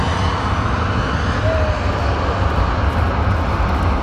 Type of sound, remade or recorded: recorded